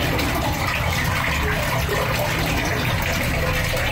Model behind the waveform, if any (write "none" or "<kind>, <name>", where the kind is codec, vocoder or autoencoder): none